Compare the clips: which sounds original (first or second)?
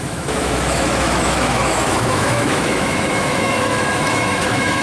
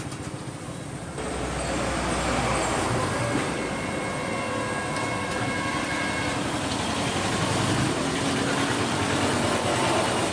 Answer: second